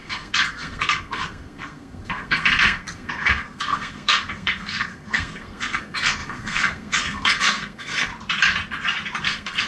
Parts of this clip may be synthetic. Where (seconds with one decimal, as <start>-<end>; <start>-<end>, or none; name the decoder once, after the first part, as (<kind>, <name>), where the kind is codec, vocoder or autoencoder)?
0.0-8.1 (codec, SNAC); 9.2-9.7